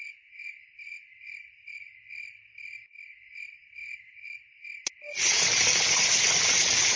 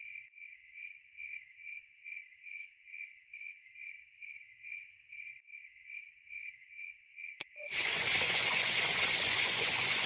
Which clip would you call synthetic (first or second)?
second